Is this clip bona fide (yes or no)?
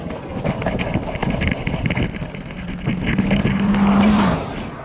yes